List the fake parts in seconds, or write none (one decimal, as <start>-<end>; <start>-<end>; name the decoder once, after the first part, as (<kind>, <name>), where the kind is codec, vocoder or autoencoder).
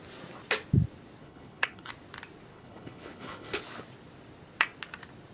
1.2-1.9 (codec, HILCodec); 2.5-3.6